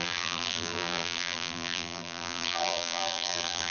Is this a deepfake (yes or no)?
yes